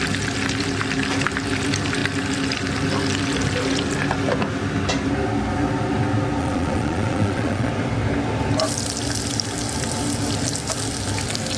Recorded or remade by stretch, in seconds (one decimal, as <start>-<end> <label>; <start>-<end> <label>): 0.0-6.4 recorded; 6.4-7.7 remade; 7.7-11.6 recorded